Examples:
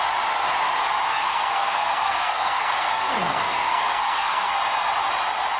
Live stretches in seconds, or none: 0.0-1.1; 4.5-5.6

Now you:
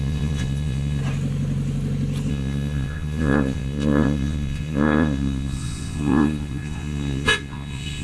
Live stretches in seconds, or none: 1.0-2.3

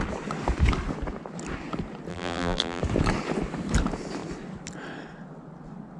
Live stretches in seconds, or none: 0.0-2.1; 2.8-6.0

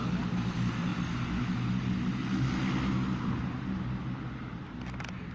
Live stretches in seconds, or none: 0.0-5.3

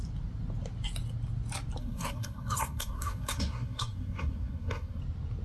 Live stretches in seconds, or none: 0.0-1.8; 5.0-5.4

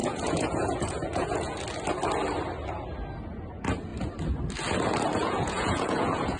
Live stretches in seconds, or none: 1.6-5.2

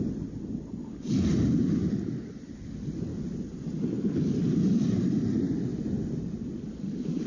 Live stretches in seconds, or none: 0.0-7.3

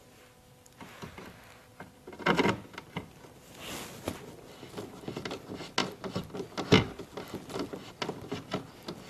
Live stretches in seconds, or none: 0.0-9.1